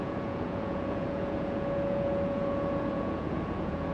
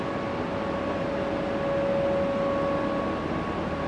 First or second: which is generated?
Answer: first